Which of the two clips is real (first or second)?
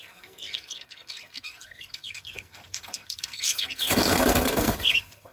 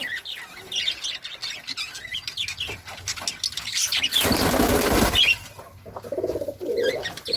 second